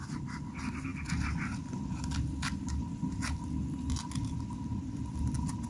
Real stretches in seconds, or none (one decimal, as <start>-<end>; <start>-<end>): 0.0-5.7